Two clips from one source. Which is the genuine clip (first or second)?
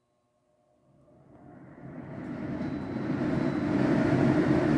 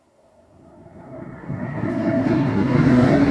first